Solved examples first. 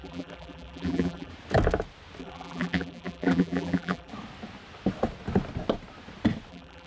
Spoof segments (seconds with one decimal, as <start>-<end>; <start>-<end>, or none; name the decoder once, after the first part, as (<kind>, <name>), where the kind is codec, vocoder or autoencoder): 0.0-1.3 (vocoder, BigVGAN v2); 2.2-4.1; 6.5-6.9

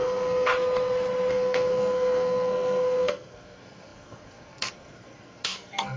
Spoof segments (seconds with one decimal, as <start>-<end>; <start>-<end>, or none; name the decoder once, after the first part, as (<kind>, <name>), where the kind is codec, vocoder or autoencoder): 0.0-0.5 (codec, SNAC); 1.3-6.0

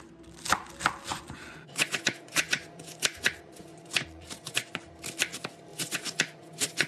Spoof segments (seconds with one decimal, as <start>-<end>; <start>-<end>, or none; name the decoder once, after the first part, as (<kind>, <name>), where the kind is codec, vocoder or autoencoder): 1.1-4.9 (vocoder, Vocos); 5.7-6.9